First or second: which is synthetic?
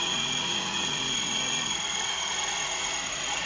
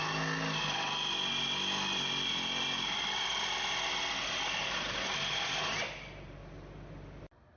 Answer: first